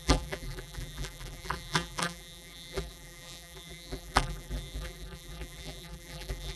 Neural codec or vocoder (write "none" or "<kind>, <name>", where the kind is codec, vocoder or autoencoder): vocoder, BigVGAN v2